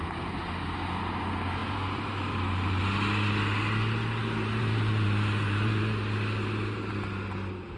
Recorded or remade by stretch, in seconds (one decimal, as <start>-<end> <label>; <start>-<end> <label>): 0.0-1.6 recorded; 1.6-2.8 remade; 2.8-4.2 recorded; 4.2-6.9 remade; 6.9-7.8 recorded